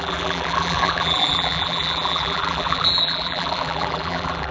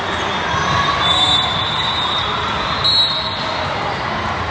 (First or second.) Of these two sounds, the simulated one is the first